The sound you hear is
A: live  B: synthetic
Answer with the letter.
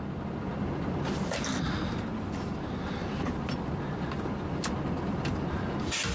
A